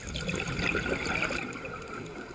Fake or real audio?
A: fake